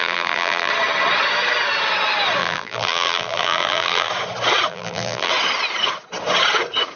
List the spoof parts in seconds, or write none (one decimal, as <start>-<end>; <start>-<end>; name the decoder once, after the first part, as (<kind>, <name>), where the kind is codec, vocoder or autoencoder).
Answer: 0.0-0.7 (vocoder, BigVGAN v2); 2.4-4.1; 4.7-5.3

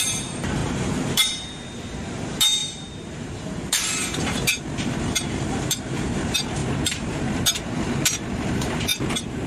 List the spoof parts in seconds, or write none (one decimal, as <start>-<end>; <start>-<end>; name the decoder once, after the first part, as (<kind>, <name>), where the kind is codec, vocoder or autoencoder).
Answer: 0.0-9.5 (vocoder, BigVGAN v2)